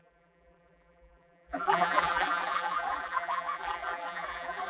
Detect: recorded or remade remade